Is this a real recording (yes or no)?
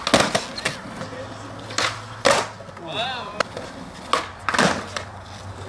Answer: yes